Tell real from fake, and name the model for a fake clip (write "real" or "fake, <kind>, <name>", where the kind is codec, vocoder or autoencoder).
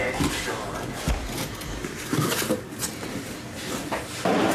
real